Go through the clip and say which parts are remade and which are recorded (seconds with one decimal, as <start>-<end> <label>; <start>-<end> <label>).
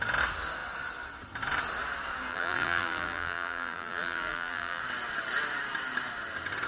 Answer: 0.0-2.3 recorded; 2.3-4.8 remade; 4.8-6.7 recorded